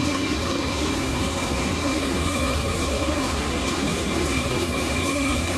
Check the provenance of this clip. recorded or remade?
remade